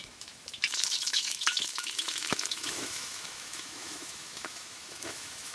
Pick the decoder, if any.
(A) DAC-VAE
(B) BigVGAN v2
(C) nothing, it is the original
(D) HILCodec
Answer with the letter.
A